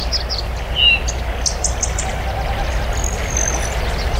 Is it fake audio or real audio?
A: real